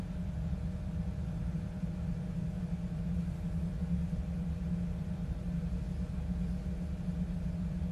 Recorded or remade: recorded